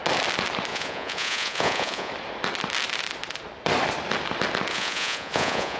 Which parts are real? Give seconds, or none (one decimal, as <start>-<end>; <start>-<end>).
0.0-0.7; 2.1-4.7